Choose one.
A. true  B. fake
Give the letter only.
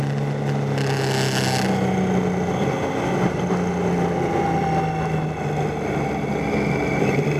A